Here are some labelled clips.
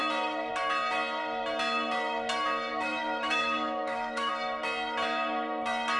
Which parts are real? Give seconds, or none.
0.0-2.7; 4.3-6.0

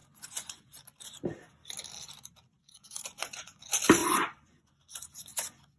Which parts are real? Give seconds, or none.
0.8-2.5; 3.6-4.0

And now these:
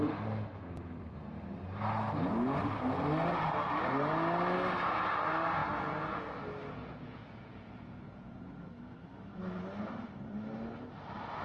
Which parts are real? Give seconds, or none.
0.0-5.6; 6.2-6.8; 8.6-11.4

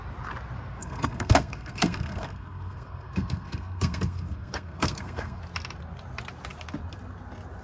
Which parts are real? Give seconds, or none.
0.0-0.8; 5.4-7.6